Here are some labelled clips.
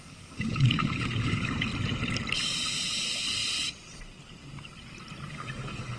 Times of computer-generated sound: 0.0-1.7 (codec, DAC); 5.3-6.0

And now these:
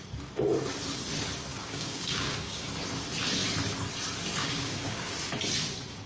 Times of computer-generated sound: 1.5-2.7 (codec, DAC); 4.4-5.1

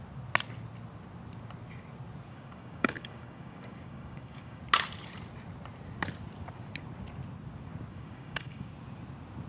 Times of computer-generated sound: 2.3-4.6 (codec, DAC); 7.9-8.7

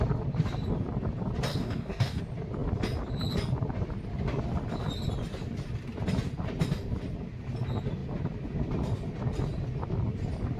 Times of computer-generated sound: 1.5-2.2 (codec, DAC)

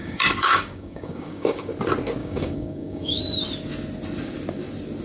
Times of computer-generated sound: 0.0-1.7 (codec, DAC); 2.2-3.2

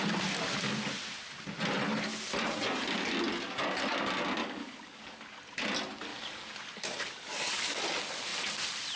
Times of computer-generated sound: 4.4-5.4 (codec, DAC); 6.1-7.8